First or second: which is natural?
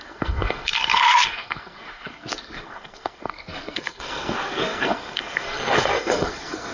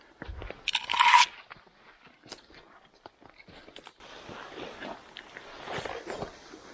second